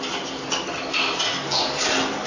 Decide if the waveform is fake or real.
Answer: real